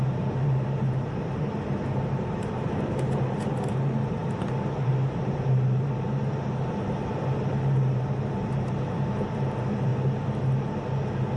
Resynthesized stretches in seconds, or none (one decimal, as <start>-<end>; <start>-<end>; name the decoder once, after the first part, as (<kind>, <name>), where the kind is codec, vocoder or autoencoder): 0.0-9.9 (vocoder, BigVGAN v2)